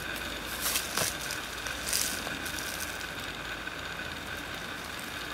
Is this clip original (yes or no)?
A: yes